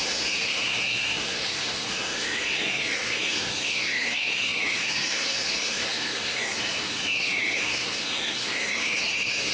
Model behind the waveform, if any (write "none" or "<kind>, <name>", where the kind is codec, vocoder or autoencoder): codec, SNAC